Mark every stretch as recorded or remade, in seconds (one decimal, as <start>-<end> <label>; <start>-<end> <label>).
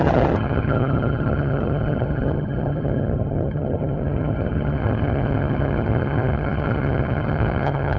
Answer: 0.0-8.0 remade